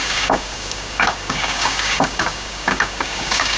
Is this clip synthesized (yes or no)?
yes